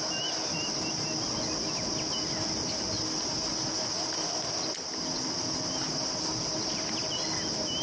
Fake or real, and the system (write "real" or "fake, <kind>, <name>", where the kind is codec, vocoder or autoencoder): real